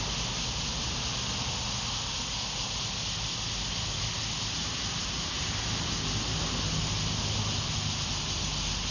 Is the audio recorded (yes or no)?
yes